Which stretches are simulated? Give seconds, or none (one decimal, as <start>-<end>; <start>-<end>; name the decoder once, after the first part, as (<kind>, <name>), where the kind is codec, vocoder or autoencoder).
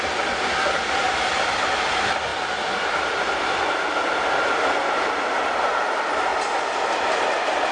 2.3-4.2 (vocoder, BigVGAN v2)